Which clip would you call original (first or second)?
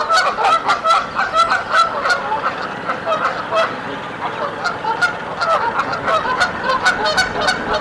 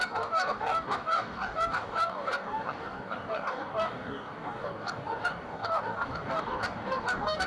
first